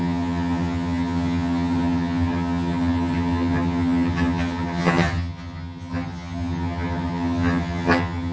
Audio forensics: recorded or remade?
remade